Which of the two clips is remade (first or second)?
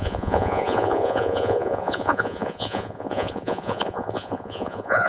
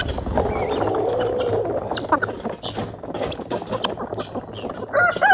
first